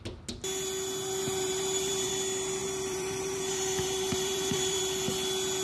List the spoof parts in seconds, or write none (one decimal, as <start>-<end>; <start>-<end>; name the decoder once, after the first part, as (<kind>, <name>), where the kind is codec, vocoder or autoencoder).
1.2-2.1 (vocoder, BigVGAN v2); 2.6-4.8